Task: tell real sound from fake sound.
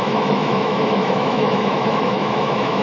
fake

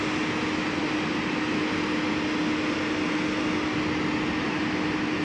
real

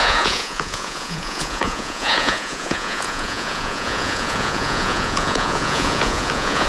fake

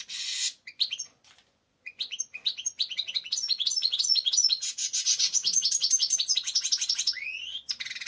fake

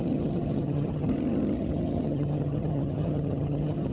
fake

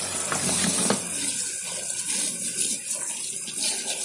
real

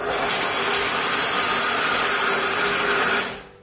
real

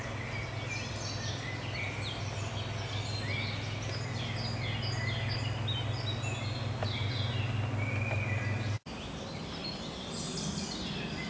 real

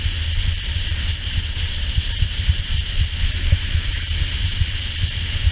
real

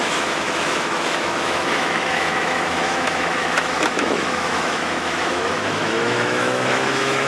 fake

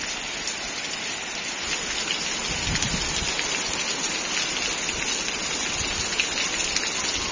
real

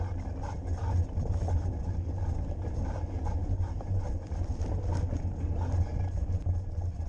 real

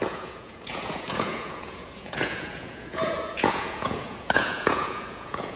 fake